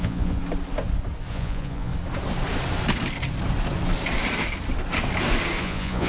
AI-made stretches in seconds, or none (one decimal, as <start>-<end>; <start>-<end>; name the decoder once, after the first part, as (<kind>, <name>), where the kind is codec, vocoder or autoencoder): 0.0-0.4 (vocoder, Vocos); 1.3-1.9; 5.6-6.1

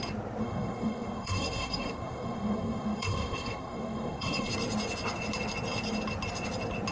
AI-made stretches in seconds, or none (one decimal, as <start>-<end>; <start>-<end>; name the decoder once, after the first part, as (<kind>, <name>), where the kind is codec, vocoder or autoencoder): 0.4-4.5 (codec, SNAC)

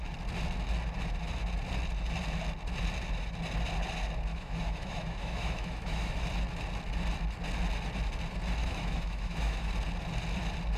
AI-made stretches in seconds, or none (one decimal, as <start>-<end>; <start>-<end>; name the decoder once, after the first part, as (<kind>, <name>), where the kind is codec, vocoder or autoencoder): 4.3-6.1 (autoencoder, DAC-VAE); 8.6-9.7

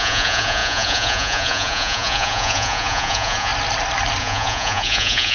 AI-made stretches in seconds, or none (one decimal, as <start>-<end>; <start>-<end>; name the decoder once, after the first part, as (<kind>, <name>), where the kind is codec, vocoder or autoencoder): 0.0-3.5 (vocoder, Vocos); 4.2-5.3

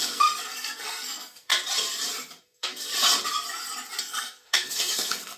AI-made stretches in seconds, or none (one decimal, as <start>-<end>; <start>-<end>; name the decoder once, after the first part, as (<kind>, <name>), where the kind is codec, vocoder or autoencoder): 0.0-1.5 (codec, SNAC); 2.4-2.9; 4.0-5.4

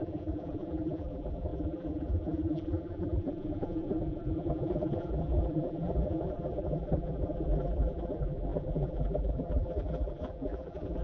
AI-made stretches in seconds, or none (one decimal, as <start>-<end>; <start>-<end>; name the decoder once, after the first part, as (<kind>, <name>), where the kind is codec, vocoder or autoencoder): 0.0-11.0 (vocoder, BigVGAN v2)